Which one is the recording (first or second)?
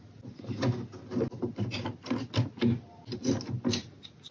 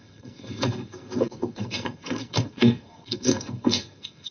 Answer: first